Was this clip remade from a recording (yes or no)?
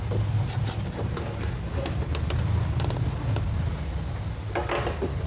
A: no